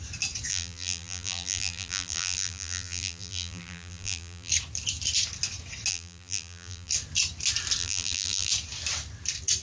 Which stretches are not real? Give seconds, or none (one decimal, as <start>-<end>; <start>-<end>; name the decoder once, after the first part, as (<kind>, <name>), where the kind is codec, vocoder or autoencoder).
0.5-4.5 (vocoder, BigVGAN v2); 5.9-6.9; 7.8-8.5